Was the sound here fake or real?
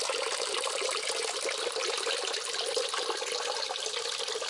real